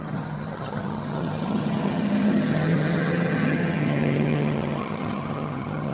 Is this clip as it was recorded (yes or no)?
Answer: no